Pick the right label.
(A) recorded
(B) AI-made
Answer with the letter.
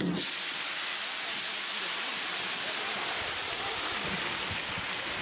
A